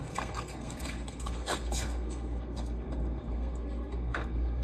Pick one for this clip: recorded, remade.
remade